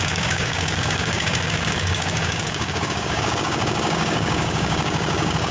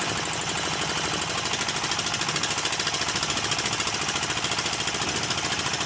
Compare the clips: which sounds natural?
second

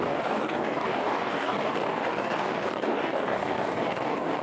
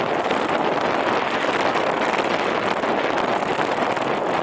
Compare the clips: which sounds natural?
second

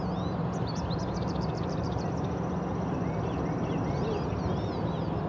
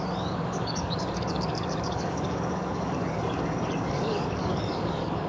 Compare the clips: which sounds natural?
first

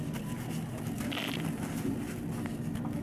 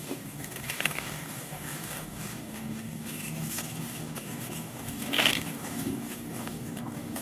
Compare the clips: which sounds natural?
first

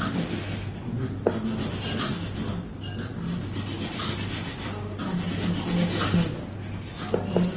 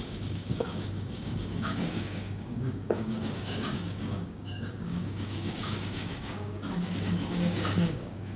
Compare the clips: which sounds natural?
first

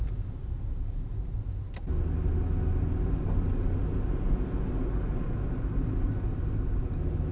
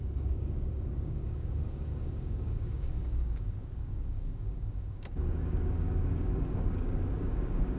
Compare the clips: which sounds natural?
first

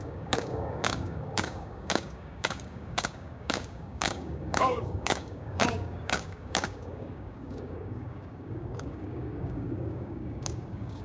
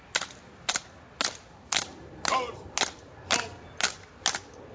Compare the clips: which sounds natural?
second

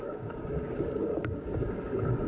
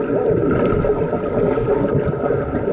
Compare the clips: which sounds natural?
second